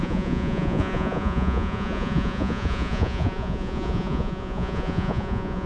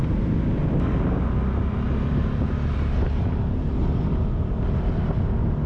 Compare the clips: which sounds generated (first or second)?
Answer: first